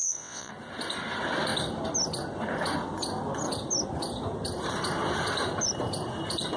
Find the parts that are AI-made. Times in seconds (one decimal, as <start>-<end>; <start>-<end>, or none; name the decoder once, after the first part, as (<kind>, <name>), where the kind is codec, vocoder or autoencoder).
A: 0.0-0.5 (vocoder, WaveNeXt)